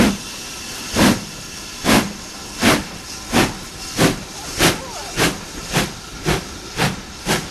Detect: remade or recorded recorded